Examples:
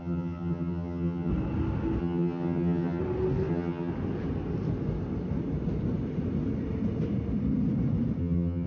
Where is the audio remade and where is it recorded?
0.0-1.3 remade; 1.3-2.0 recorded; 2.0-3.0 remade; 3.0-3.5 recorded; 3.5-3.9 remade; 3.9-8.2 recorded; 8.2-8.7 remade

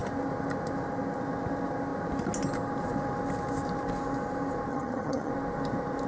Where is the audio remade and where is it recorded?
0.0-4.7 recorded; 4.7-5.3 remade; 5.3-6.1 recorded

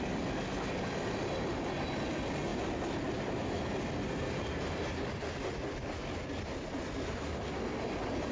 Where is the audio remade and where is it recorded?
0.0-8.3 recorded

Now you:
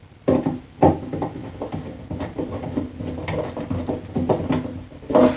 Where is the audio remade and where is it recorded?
0.0-5.4 recorded

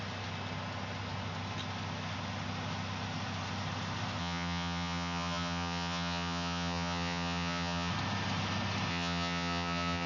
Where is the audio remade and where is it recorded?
0.0-4.2 recorded; 4.2-7.9 remade; 7.9-8.9 recorded; 8.9-10.1 remade

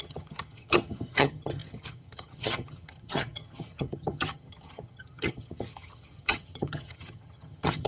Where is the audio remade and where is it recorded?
0.0-7.9 remade